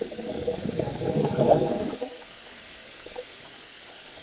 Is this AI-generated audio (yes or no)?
yes